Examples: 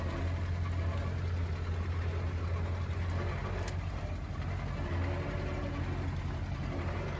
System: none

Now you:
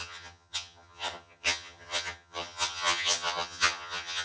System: vocoder, HiFi-GAN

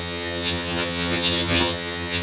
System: vocoder, HiFi-GAN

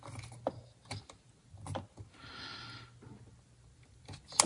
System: none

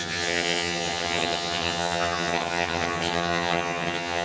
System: vocoder, HiFi-GAN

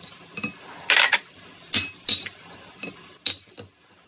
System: none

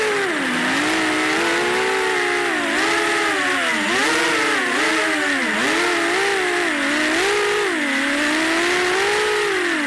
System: none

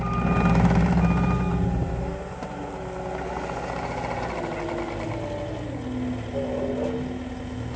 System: none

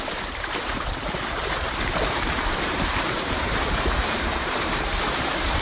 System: vocoder, BigVGAN v2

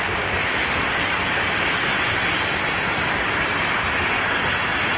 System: none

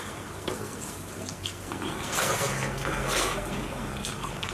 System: codec, SNAC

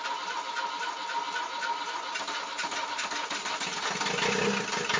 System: none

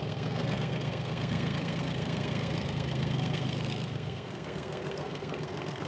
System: codec, SNAC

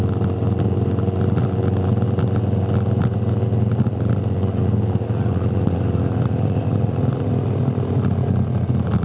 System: none